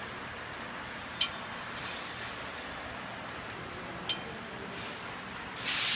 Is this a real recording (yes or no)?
yes